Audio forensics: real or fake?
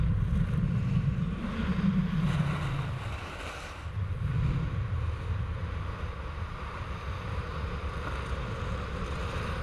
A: real